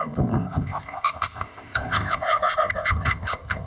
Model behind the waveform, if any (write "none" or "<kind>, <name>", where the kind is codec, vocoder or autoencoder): codec, ZipCodec